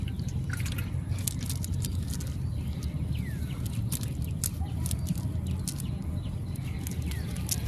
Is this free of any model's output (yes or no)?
yes